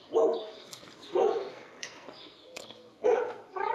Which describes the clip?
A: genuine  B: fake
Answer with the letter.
B